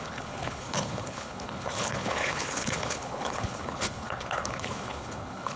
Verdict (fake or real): fake